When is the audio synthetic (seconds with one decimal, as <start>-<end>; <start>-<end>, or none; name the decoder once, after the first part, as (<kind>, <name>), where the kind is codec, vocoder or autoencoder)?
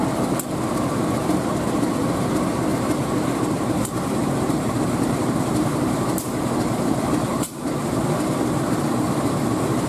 2.7-6.5 (vocoder, BigVGAN v2); 7.3-8.0